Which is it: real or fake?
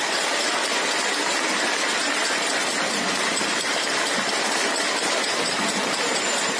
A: real